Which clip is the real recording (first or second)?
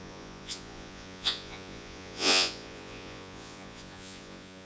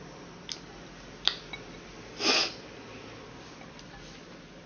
second